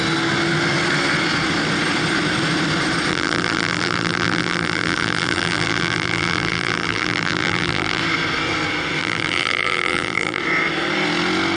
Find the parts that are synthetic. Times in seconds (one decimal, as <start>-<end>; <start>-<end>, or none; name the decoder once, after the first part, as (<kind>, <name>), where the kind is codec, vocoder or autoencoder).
3.1-8.0 (vocoder, BigVGAN v2); 9.0-10.4